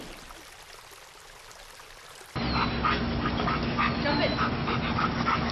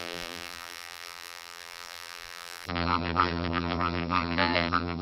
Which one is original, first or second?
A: first